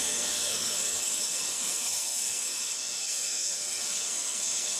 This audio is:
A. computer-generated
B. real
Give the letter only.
A